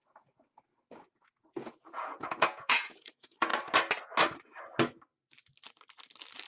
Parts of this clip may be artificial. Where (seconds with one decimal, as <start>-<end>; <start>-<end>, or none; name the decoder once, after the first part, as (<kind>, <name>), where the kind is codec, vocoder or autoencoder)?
0.0-3.5 (vocoder, Vocos)